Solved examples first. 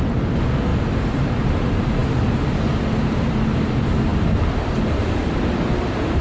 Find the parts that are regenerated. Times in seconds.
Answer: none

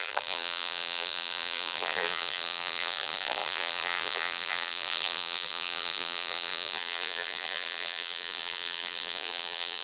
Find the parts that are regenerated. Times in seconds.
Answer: 0.0-9.8

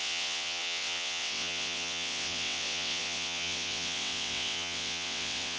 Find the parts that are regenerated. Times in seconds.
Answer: 0.0-5.6

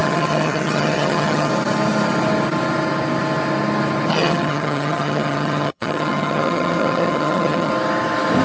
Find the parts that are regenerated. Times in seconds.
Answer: 0.0-1.5; 4.1-7.7